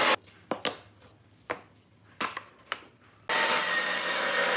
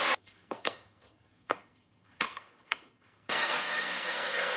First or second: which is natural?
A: first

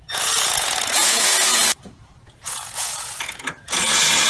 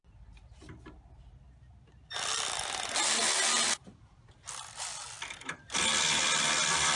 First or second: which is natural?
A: second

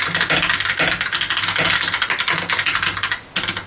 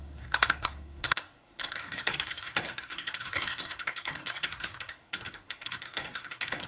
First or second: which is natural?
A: first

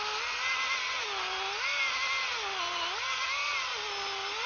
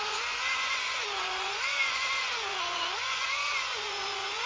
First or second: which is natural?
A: first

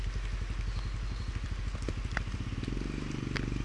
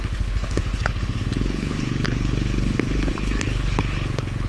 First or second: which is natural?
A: first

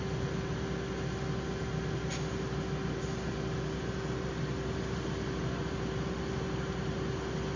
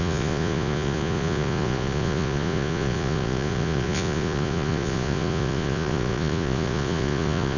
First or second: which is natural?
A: first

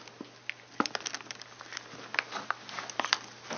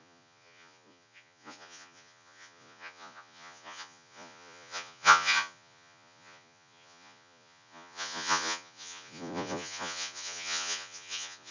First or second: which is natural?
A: first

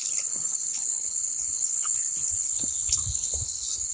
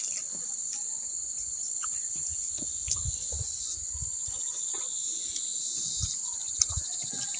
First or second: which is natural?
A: second